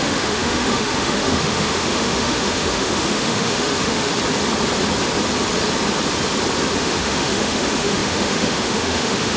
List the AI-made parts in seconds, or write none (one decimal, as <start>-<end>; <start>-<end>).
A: 0.0-4.1; 6.8-9.4